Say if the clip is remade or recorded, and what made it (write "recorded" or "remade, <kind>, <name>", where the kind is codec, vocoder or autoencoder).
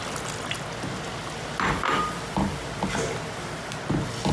recorded